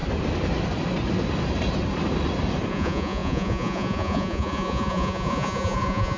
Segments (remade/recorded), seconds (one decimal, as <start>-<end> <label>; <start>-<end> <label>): 0.0-2.7 recorded; 2.7-6.2 remade